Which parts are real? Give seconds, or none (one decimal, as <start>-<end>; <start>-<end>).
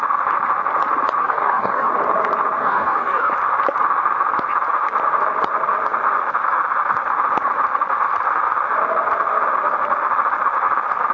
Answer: 0.0-1.2; 1.9-2.6; 3.3-11.1